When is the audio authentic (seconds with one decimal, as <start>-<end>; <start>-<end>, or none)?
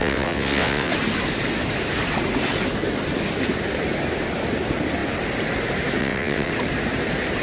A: 0.9-6.0; 6.5-7.4